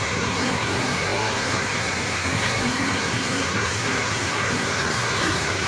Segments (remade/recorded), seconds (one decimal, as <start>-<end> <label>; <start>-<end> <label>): 0.0-5.7 remade